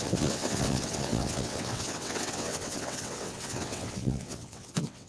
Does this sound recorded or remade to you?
remade